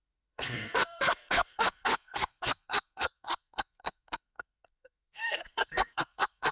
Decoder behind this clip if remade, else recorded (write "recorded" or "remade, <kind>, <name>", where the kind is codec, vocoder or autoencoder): remade, codec, SNAC